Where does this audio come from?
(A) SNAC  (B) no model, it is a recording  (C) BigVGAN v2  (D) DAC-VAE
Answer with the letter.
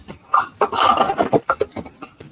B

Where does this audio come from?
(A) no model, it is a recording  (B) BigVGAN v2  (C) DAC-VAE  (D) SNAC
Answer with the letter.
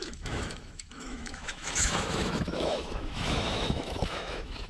C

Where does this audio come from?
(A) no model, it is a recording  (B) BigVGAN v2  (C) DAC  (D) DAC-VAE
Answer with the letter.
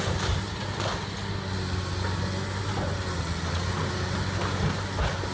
A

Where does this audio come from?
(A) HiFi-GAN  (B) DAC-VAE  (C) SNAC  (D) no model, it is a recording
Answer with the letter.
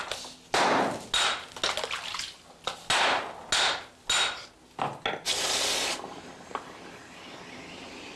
D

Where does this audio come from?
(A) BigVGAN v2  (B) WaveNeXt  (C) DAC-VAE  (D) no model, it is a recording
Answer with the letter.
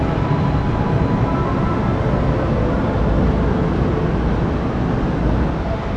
D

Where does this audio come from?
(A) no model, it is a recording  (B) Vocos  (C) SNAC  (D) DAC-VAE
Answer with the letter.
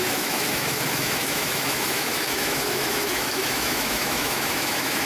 D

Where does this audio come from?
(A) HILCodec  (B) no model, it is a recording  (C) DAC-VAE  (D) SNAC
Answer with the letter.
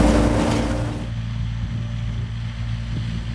B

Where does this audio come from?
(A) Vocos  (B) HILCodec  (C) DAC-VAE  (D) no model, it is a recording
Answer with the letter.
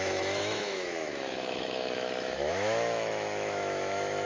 C